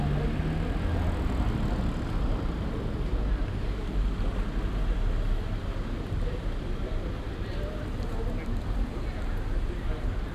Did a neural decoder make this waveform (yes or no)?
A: no